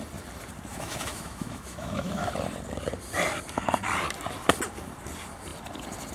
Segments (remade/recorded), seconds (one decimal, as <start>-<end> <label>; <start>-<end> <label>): 0.0-0.7 recorded; 0.7-2.3 remade; 2.3-6.1 recorded